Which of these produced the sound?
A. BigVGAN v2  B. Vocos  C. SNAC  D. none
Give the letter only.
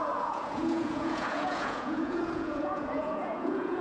B